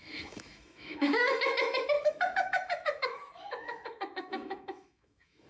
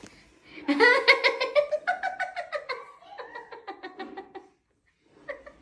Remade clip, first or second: first